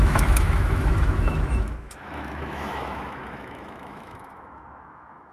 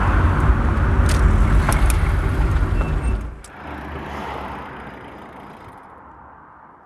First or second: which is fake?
first